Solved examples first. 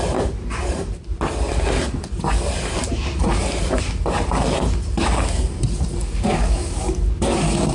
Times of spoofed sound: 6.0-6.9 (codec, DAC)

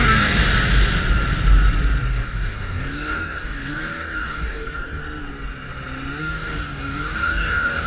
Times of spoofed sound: 0.0-0.4 (codec, DAC); 2.1-5.0; 6.2-7.9

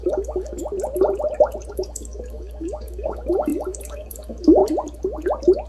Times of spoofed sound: 0.0-0.6 (codec, DAC); 1.7-4.6

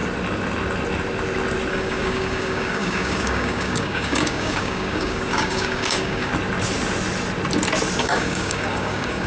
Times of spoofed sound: 1.7-6.3 (codec, DAC); 8.0-9.3

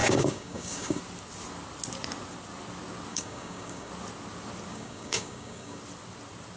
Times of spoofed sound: 0.0-1.0 (codec, DAC); 3.1-3.9; 4.7-5.8

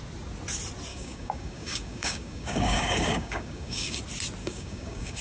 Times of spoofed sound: 0.9-4.0 (codec, DAC); 4.4-5.2

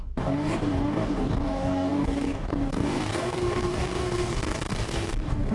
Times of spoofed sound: 0.0-5.5 (codec, DAC)

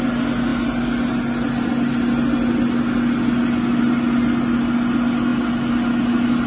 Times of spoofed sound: none